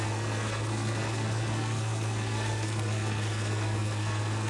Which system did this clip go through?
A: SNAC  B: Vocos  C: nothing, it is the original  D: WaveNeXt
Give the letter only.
A